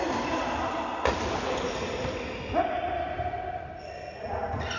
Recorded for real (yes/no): yes